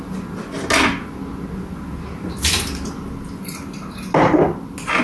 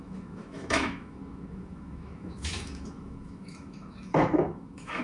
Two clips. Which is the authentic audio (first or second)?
first